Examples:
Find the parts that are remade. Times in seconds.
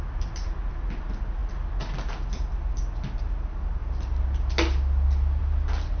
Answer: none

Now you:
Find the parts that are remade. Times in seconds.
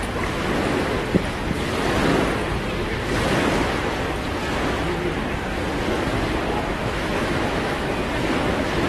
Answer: 6.8-7.9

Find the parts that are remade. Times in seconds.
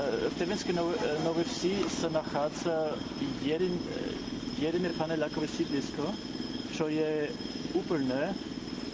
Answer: none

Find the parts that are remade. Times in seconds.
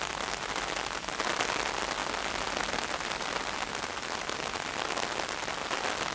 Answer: none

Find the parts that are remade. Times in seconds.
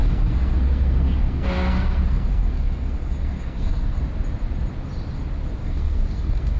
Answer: 0.0-4.0; 5.6-6.6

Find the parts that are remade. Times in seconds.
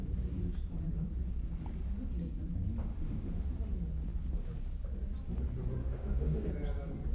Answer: 2.9-3.5; 5.8-6.5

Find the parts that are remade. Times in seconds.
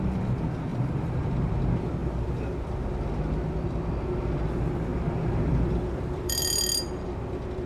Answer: 0.7-1.3; 4.9-6.4